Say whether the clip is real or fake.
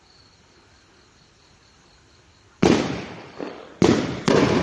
real